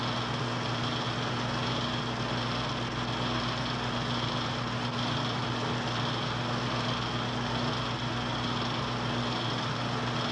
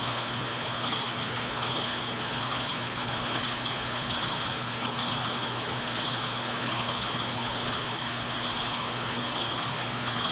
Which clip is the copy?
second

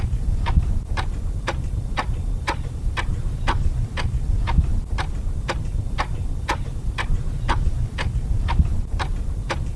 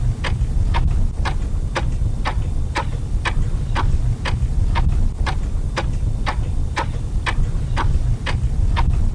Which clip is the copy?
first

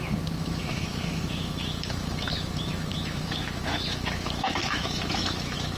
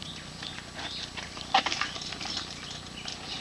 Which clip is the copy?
first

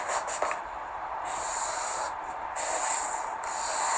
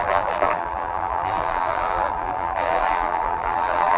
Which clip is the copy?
second